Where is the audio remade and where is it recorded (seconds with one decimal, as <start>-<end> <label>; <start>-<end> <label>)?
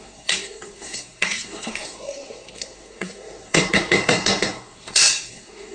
0.0-5.7 remade